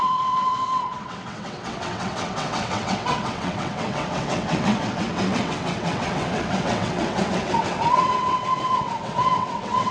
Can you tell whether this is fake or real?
fake